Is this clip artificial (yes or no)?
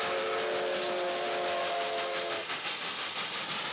no